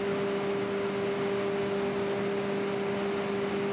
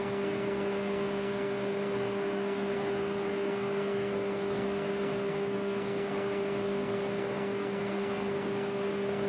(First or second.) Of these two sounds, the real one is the first